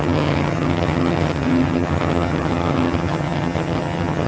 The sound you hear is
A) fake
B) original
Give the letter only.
A